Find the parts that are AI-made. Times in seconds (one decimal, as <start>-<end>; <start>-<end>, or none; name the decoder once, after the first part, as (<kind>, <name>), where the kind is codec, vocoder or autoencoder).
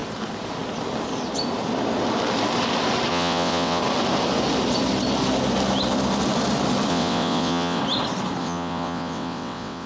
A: 3.1-3.8 (vocoder, WaveNeXt); 6.9-7.8; 8.4-9.9